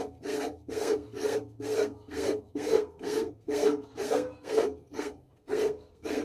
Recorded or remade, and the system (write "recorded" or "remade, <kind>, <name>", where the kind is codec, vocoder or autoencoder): remade, codec, SNAC